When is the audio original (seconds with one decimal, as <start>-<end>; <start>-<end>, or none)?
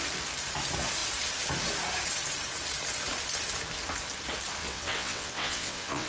0.0-4.6